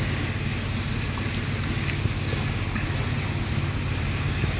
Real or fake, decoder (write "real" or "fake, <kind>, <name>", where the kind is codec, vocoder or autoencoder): real